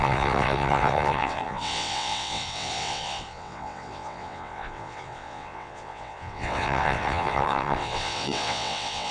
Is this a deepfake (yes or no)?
yes